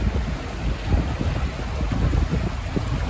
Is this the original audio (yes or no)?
yes